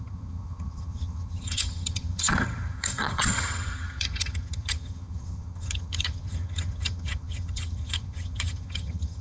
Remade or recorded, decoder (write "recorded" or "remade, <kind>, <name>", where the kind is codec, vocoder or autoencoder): remade, vocoder, HiFi-GAN